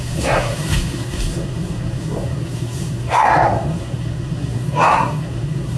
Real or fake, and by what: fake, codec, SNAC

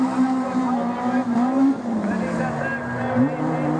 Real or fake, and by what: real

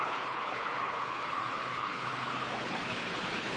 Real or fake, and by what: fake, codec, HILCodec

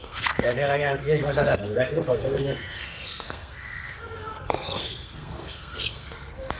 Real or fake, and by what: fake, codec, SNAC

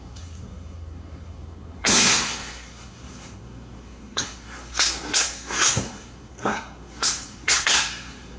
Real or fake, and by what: fake, codec, SNAC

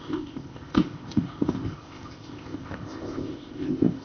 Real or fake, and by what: fake, codec, ZipCodec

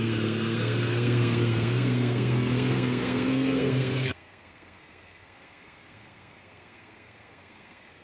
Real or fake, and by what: fake, codec, SNAC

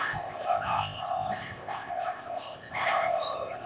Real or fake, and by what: fake, codec, ZipCodec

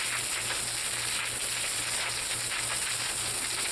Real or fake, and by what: real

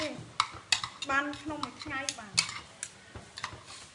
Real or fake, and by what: real